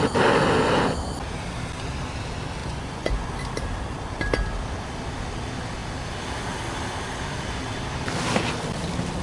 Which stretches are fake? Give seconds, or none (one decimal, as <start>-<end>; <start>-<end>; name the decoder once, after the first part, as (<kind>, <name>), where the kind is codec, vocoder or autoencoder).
2.6-3.3 (vocoder, Vocos)